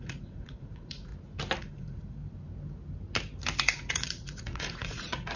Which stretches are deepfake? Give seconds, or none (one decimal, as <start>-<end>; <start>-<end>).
0.0-1.1; 1.6-2.2; 3.6-5.4